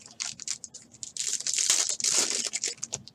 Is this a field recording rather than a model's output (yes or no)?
yes